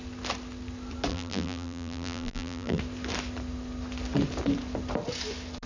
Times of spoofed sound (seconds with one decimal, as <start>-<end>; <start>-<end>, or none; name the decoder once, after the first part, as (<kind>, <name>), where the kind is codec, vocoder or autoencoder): 1.1-2.8 (vocoder, BigVGAN v2)